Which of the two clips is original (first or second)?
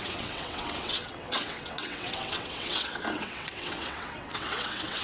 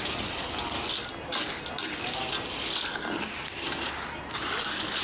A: second